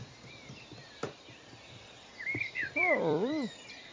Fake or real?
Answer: fake